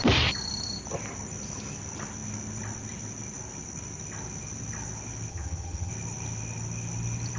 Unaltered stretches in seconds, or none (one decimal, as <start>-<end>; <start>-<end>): 0.0-5.3; 5.9-7.4